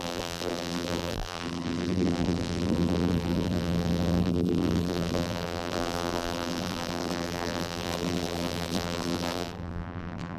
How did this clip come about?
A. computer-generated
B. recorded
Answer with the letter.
A